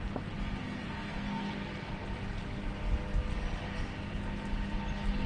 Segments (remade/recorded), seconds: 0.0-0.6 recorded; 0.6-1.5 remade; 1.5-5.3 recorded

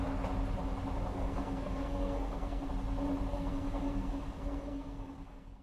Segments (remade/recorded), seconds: 0.0-1.1 recorded; 1.1-2.7 remade; 2.7-3.3 recorded; 3.3-5.6 remade

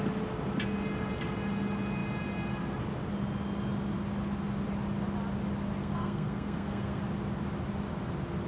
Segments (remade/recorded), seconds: 0.0-5.8 recorded; 5.8-7.0 remade; 7.0-8.5 recorded

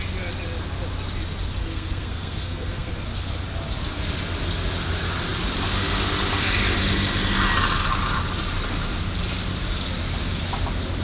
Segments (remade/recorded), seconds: 0.0-1.6 recorded; 1.6-2.9 remade; 2.9-11.0 recorded

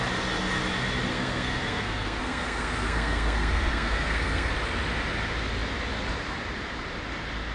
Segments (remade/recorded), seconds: 0.0-1.1 recorded; 1.1-4.5 remade; 4.5-7.5 recorded

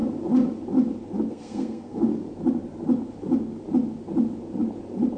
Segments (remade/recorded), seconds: 0.0-1.3 recorded; 1.3-2.1 remade; 2.1-5.2 recorded

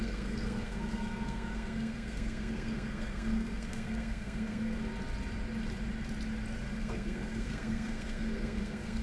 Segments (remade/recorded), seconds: 0.0-4.8 remade; 4.8-6.8 recorded; 6.8-9.0 remade